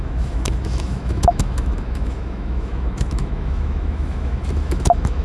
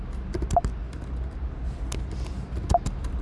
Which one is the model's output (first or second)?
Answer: first